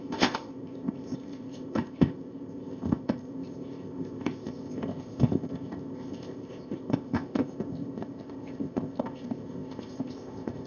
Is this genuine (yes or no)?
no